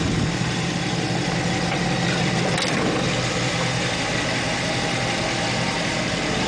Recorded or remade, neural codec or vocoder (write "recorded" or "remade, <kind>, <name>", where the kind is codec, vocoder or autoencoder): recorded